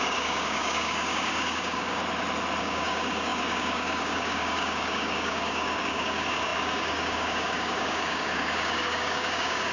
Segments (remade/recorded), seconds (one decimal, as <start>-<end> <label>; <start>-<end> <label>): 0.0-2.0 remade; 2.0-2.6 recorded; 2.6-9.7 remade